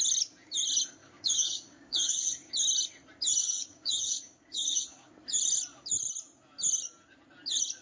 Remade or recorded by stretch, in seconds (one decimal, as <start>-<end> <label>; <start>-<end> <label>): 0.0-1.0 recorded; 1.0-2.5 remade; 2.5-3.4 recorded; 3.4-5.1 remade; 5.1-7.8 recorded